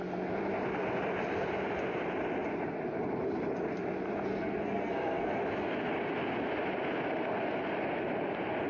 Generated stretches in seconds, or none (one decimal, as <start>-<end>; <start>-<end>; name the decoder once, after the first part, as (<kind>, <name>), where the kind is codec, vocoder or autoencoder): 4.3-5.4 (codec, SNAC)